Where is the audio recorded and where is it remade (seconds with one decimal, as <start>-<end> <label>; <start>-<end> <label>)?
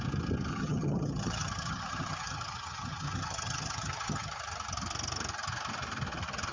0.0-0.5 recorded; 0.5-4.4 remade; 4.4-6.5 recorded